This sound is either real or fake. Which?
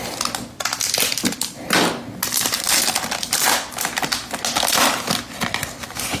real